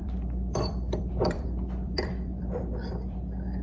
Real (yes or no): no